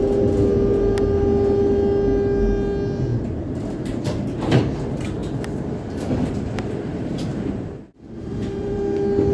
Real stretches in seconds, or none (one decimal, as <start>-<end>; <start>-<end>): 0.0-3.1; 4.6-6.9; 8.8-9.3